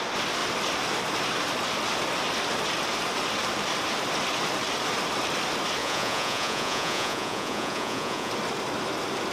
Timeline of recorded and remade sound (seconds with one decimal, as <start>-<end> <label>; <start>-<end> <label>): 0.0-5.8 recorded; 5.8-8.3 remade; 8.3-9.3 recorded